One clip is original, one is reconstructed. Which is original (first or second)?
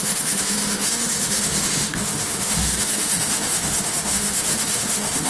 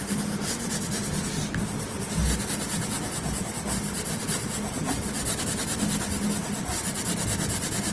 second